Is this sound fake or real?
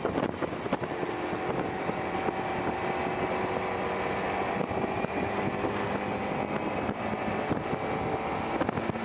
real